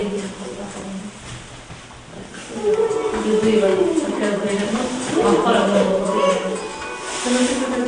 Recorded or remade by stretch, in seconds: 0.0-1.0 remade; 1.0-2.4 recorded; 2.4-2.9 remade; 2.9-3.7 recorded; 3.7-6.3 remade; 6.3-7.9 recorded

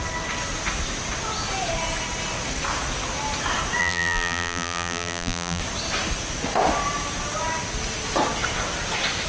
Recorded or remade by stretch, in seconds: 0.0-3.8 recorded; 3.8-5.6 remade; 5.6-9.3 recorded

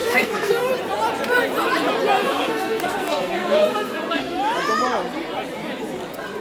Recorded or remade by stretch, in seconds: 0.0-0.7 remade; 0.7-2.2 recorded; 2.2-4.4 remade; 4.4-6.4 recorded

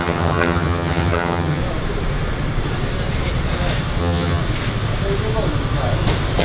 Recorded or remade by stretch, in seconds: 0.0-1.6 remade; 1.6-4.0 recorded; 4.0-4.4 remade; 4.4-6.4 recorded

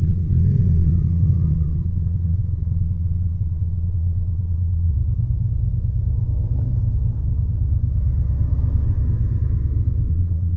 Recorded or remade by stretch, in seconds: 0.0-4.9 remade; 4.9-10.1 recorded; 10.1-10.6 remade

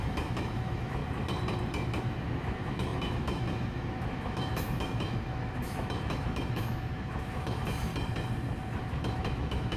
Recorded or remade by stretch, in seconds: 0.0-1.0 remade; 1.0-2.0 recorded; 2.0-7.9 remade; 7.9-8.8 recorded; 8.8-9.8 remade

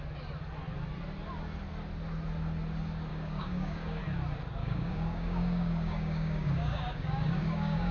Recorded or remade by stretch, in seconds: 0.0-3.1 recorded; 3.1-4.0 remade; 4.0-4.6 recorded; 4.6-7.9 remade